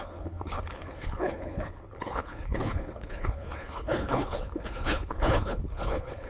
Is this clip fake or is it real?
fake